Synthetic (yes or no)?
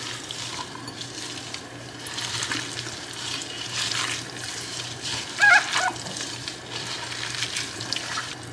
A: no